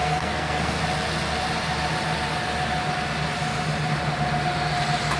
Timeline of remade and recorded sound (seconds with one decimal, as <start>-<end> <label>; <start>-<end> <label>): 0.0-0.8 remade; 0.8-5.2 recorded

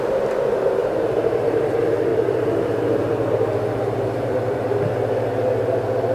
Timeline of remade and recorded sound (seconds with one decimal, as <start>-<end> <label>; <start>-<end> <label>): 0.0-0.8 recorded; 0.8-1.7 remade; 1.7-2.1 recorded; 2.1-4.8 remade; 4.8-6.1 recorded

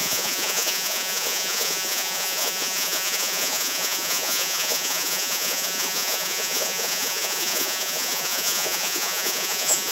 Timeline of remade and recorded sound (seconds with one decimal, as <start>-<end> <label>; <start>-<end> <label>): 0.0-9.9 remade

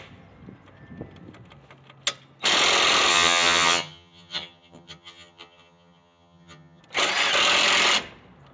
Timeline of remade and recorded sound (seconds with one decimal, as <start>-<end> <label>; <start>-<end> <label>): 0.0-3.1 recorded; 3.1-6.8 remade; 6.8-8.5 recorded

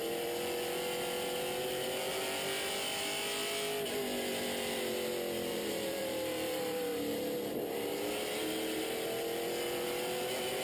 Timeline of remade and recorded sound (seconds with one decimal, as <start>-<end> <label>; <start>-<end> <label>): 0.0-5.5 recorded; 5.5-7.1 remade; 7.1-10.6 recorded

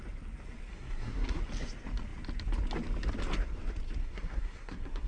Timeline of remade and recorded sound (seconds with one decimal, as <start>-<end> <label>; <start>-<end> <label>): 0.0-0.7 recorded; 0.7-1.4 remade; 1.4-4.0 recorded; 4.0-5.1 remade

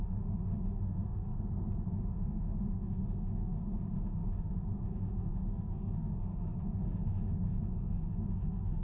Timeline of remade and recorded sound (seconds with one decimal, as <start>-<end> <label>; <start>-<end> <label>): 0.0-1.3 remade; 1.3-1.9 recorded; 1.9-8.8 remade

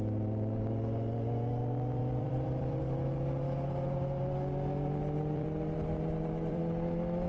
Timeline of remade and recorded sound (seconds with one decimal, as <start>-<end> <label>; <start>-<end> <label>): 0.0-2.0 recorded; 2.0-2.8 remade; 2.8-5.0 recorded; 5.0-6.6 remade; 6.6-7.3 recorded